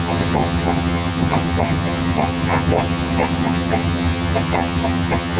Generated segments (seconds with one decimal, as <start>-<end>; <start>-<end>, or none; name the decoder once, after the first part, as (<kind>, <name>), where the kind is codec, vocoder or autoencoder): 0.0-5.4 (vocoder, HiFi-GAN)